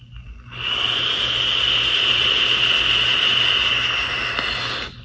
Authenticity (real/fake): real